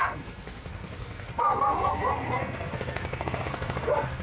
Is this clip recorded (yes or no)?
no